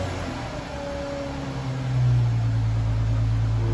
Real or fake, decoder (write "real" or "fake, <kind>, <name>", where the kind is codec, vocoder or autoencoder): real